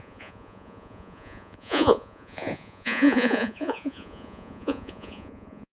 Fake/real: fake